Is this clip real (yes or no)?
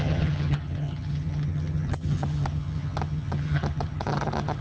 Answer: no